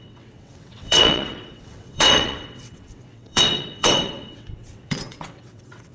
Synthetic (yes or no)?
yes